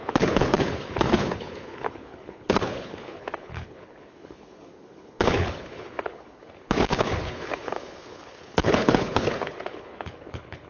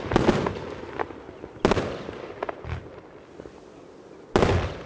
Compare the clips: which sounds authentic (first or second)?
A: second